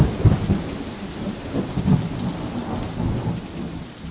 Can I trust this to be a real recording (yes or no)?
yes